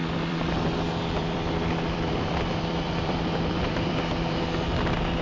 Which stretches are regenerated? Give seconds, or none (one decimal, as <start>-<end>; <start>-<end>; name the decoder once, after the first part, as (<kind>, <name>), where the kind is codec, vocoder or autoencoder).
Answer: 0.0-0.5 (vocoder, BigVGAN v2); 1.2-4.3